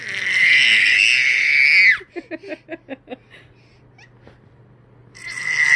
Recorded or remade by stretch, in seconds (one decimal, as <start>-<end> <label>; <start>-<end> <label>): 0.0-5.8 recorded